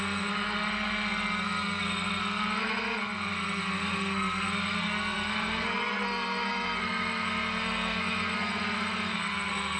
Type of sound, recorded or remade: remade